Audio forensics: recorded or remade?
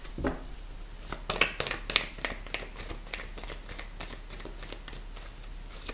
recorded